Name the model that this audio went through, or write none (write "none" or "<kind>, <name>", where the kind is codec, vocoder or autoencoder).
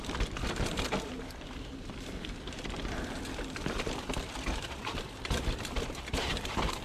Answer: vocoder, BigVGAN v2